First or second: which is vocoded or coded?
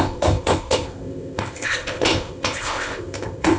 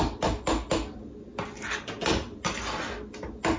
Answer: first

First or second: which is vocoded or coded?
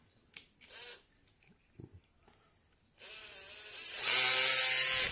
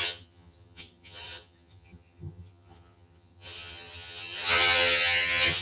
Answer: second